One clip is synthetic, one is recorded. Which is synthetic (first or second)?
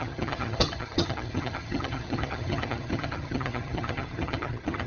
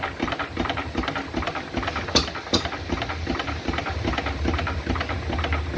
first